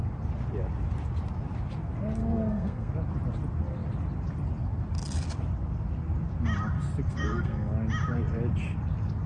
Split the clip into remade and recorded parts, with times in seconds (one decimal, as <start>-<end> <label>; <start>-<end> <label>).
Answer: 0.0-2.2 recorded; 2.2-2.9 remade; 2.9-7.1 recorded; 7.1-7.7 remade; 7.7-9.3 recorded